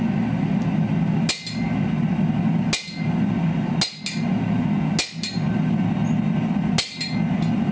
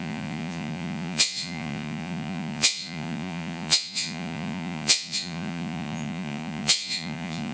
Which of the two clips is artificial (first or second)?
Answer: second